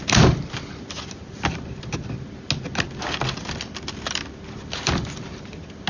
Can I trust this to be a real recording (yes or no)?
yes